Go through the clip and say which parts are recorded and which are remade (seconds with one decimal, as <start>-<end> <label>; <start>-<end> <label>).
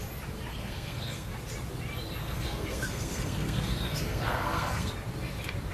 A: 0.0-0.5 recorded; 0.5-1.3 remade; 1.3-2.2 recorded; 2.2-4.9 remade; 4.9-5.7 recorded